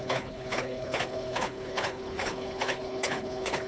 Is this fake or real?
fake